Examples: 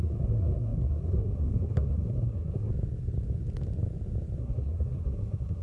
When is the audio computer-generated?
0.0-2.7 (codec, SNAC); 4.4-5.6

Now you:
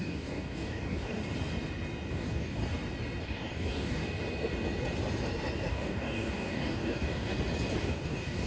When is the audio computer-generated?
0.0-1.2 (codec, DAC); 2.1-2.6; 3.2-4.0; 5.7-7.3; 7.8-8.5

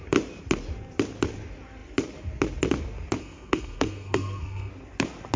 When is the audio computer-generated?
3.2-4.7 (codec, SNAC)

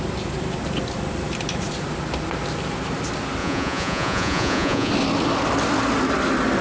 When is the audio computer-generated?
3.4-4.9 (vocoder, Vocos)